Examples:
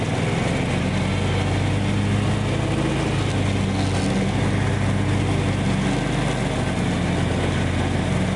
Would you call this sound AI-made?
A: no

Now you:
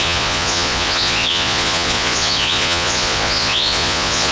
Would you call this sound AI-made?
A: yes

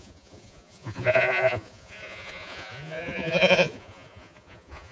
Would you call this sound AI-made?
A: yes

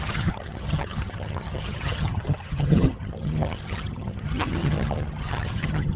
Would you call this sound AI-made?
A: yes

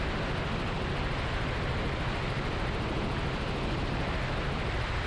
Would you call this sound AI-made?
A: no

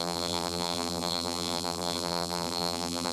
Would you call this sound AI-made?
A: yes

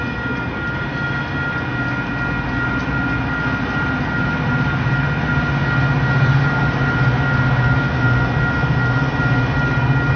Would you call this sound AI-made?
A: no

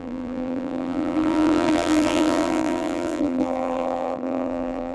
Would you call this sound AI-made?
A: yes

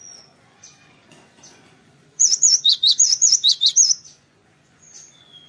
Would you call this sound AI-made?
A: yes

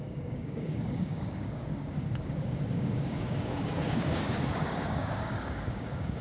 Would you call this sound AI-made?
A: yes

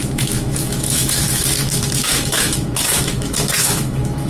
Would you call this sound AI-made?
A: yes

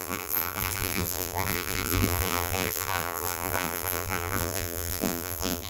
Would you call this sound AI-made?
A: yes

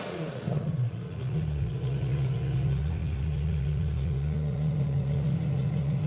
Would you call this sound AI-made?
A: yes